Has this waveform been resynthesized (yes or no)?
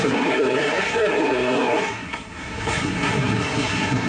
yes